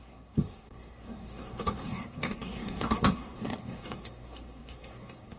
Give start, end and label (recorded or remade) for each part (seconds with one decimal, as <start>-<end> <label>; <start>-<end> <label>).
0.0-5.4 remade